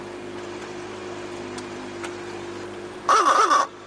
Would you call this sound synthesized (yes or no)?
no